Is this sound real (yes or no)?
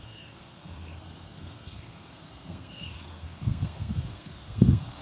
no